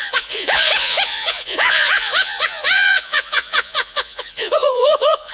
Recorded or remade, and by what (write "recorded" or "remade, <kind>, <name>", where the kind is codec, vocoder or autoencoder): remade, vocoder, Vocos